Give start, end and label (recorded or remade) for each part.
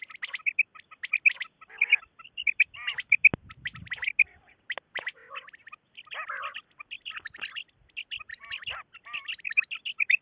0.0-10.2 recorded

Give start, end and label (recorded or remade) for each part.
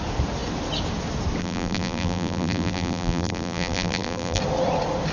0.0-1.4 recorded; 1.4-4.4 remade; 4.4-5.1 recorded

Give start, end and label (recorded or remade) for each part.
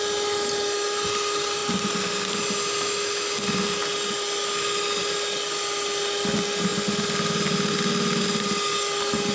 0.0-9.3 recorded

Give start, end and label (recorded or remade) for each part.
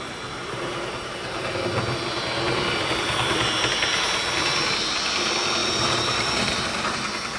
0.0-5.6 recorded; 5.6-6.6 remade; 6.6-7.4 recorded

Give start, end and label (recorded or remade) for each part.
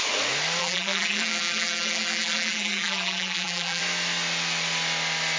0.0-0.6 recorded; 0.6-3.8 remade; 3.8-5.4 recorded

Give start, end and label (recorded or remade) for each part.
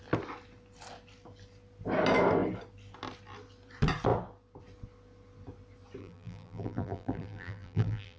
0.0-6.0 recorded; 6.0-8.2 remade